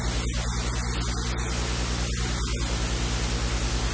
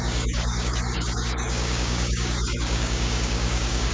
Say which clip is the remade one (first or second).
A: second